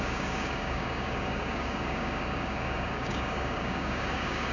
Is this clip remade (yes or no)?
yes